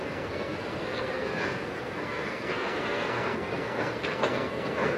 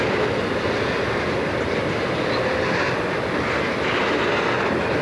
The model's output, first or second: first